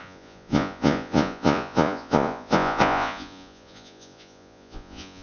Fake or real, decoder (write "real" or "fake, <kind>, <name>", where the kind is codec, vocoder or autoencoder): fake, vocoder, Vocos